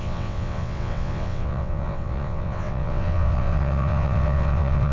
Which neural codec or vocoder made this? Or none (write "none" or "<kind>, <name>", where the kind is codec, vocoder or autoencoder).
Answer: vocoder, WaveNeXt